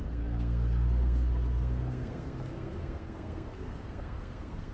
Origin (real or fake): fake